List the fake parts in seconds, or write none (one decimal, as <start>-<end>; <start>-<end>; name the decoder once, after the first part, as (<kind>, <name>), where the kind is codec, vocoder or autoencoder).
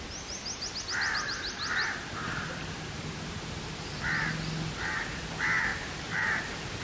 5.7-6.8 (vocoder, BigVGAN v2)